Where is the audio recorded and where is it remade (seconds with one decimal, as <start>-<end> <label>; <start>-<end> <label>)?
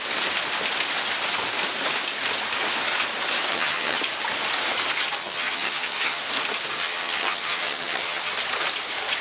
0.0-3.5 recorded; 3.5-4.0 remade; 4.0-5.2 recorded; 5.2-6.2 remade; 6.2-6.8 recorded; 6.8-8.3 remade; 8.3-9.2 recorded